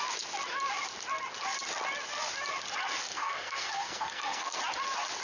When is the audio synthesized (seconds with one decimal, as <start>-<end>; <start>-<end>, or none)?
3.1-4.6